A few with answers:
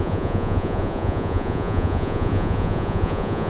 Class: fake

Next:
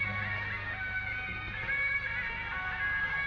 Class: real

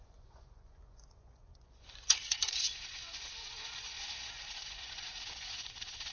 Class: fake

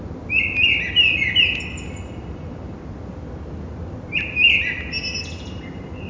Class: real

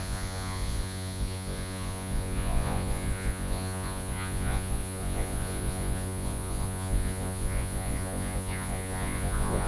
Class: fake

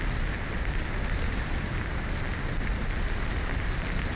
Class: real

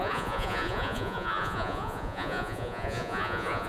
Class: fake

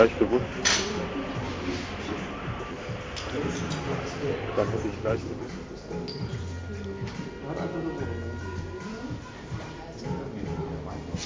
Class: real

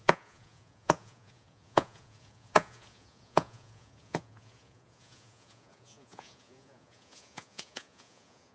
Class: fake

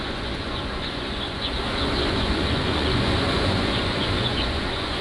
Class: fake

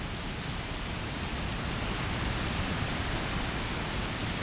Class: real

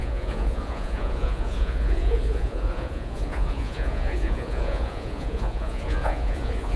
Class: fake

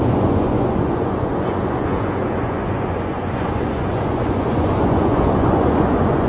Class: fake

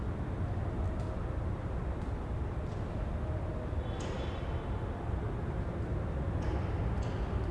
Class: real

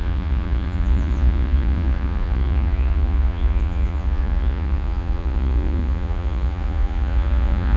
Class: fake